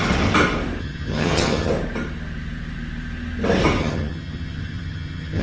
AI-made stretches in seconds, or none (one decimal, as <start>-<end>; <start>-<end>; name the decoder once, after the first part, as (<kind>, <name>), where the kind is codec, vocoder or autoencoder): 0.8-1.7 (vocoder, HiFi-GAN); 3.8-5.4